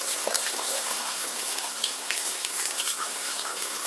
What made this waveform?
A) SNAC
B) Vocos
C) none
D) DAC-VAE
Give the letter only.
A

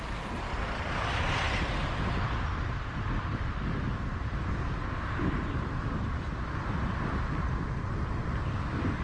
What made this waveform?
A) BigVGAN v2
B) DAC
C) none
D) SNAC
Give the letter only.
A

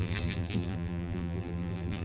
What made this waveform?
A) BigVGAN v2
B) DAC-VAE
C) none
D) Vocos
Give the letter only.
A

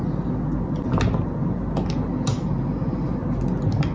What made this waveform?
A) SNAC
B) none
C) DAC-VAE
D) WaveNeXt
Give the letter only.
B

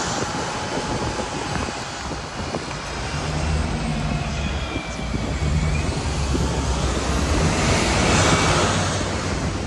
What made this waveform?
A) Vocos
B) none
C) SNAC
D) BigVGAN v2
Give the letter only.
B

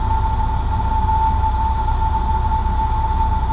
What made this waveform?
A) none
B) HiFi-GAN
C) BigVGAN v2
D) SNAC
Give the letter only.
A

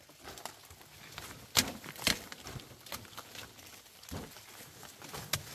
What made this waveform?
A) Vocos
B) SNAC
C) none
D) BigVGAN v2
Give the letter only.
C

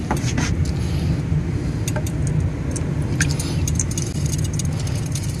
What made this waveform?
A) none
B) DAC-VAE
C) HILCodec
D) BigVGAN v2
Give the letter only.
A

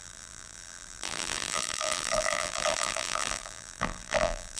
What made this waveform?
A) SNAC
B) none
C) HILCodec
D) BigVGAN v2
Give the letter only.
D